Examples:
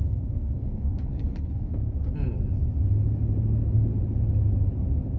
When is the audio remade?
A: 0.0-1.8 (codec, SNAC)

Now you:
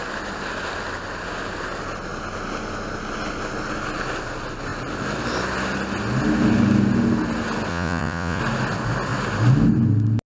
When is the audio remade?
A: 7.7-8.4 (vocoder, Vocos)

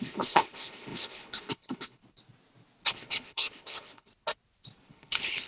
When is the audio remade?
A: 0.0-2.0 (codec, HILCodec); 2.9-4.1; 4.9-5.5

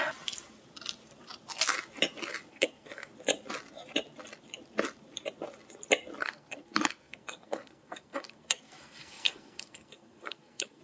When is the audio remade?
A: 2.5-3.1 (codec, SNAC); 6.2-10.8

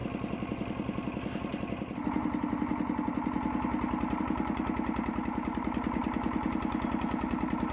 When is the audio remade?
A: none

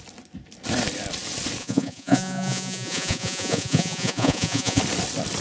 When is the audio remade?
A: 1.6-4.8 (vocoder, Vocos)

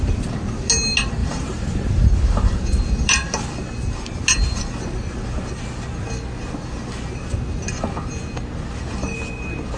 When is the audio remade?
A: 1.2-2.8 (vocoder, BigVGAN v2)

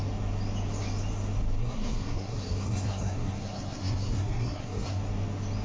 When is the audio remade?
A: 1.6-5.0 (codec, SNAC)